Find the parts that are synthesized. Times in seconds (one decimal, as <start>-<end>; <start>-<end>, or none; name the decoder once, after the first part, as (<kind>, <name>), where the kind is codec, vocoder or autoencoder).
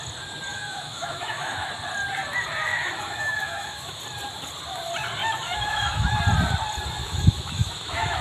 0.5-1.7 (autoencoder, DAC-VAE); 2.7-4.0; 5.2-6.2; 7.0-8.2